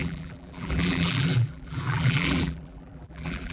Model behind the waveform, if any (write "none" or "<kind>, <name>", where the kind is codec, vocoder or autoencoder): vocoder, BigVGAN v2